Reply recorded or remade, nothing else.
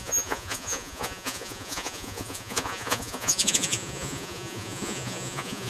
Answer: remade